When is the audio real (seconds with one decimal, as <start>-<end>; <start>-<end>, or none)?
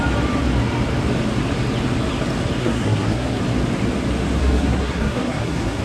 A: 0.0-2.6; 3.4-4.4